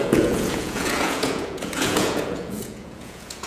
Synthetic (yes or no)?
yes